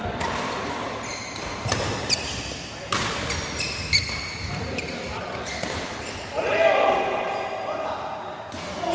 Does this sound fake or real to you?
real